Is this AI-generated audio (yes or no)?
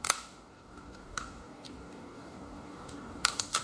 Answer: yes